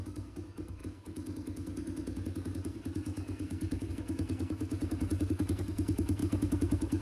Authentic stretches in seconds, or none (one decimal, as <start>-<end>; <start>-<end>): none